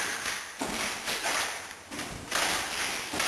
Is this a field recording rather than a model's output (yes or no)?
yes